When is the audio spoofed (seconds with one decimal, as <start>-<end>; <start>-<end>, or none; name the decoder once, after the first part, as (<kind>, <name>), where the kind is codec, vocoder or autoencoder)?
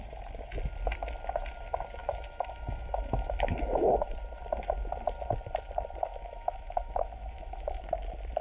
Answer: 2.0-4.1 (autoencoder, DAC-VAE); 6.1-7.8